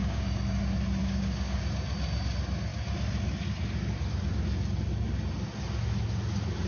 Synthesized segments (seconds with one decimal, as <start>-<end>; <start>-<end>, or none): 0.0-0.6; 1.0-1.6